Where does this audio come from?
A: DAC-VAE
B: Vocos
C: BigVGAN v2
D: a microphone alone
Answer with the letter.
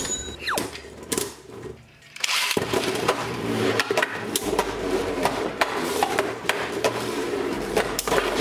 C